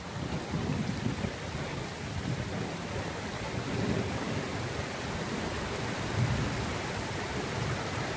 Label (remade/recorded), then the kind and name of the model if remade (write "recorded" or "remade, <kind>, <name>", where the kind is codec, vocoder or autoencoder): recorded